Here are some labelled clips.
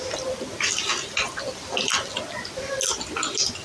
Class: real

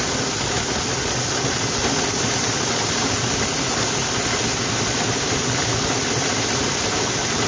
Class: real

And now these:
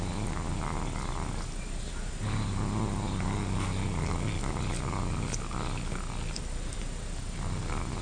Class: real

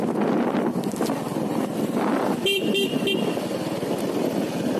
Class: real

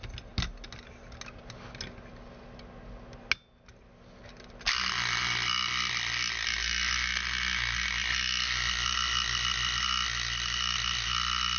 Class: real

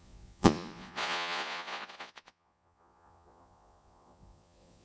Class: fake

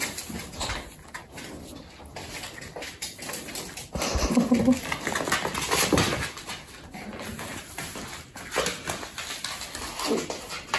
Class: real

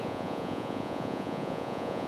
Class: fake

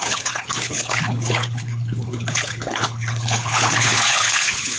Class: fake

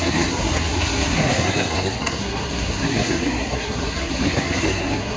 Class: fake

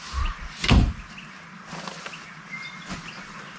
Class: real